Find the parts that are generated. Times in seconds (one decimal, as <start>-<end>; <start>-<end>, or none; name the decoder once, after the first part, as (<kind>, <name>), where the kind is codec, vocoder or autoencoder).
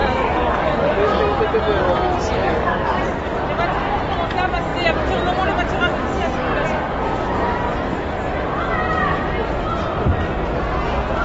0.0-1.4 (codec, DAC); 2.4-3.0